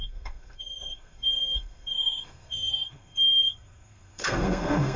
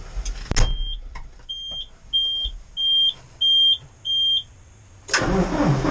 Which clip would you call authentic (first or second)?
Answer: second